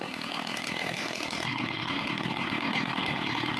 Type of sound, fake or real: fake